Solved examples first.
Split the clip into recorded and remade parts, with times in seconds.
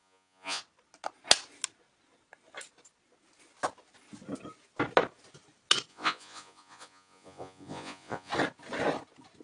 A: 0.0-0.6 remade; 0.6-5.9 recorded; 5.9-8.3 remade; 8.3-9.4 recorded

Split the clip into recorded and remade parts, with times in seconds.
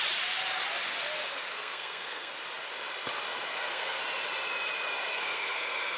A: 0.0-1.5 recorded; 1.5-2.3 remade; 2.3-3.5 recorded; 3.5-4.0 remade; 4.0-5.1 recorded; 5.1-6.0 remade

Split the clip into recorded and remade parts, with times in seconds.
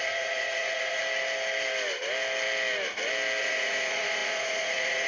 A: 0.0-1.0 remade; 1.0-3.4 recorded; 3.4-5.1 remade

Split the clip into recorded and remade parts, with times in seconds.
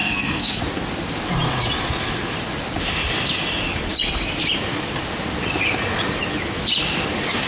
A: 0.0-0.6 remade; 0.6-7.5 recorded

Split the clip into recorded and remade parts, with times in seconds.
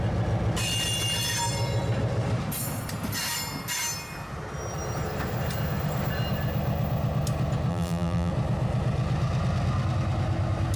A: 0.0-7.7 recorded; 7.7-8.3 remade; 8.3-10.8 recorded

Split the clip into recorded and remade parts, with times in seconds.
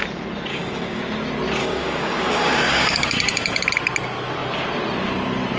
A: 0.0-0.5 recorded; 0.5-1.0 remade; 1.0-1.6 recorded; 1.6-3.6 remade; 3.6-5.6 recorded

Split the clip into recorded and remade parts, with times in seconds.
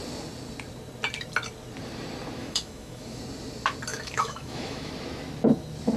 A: 0.0-2.4 recorded; 2.4-3.2 remade; 3.2-3.9 recorded; 3.9-4.9 remade; 4.9-6.0 recorded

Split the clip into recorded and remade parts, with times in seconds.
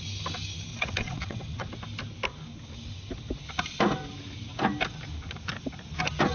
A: 0.0-0.7 recorded; 0.7-1.7 remade; 1.7-6.3 recorded